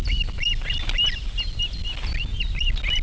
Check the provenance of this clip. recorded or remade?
recorded